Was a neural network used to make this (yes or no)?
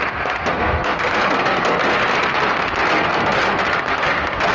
yes